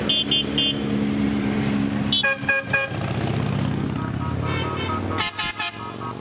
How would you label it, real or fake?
real